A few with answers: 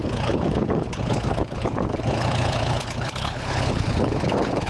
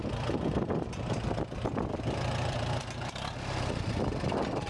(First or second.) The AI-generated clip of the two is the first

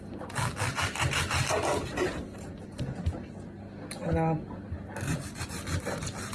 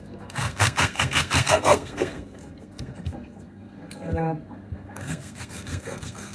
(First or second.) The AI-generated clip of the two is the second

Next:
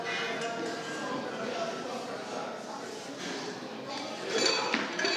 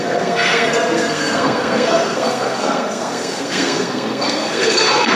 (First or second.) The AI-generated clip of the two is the second